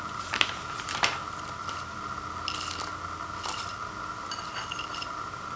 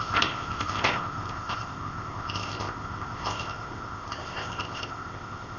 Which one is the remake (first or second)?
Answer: second